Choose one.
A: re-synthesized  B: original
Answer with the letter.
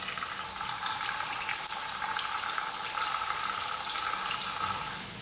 B